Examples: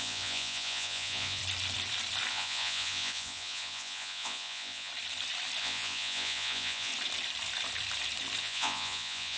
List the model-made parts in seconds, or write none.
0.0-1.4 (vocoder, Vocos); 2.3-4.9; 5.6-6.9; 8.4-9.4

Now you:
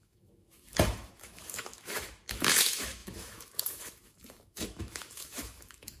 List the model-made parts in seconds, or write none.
0.0-6.0 (autoencoder, DAC-VAE)

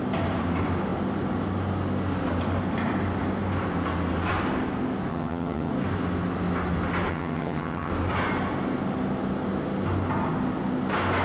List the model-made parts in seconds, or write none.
5.1-5.7 (vocoder, HiFi-GAN); 7.1-7.9

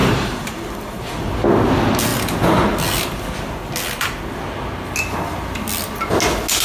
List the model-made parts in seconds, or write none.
0.0-1.1 (vocoder, BigVGAN v2)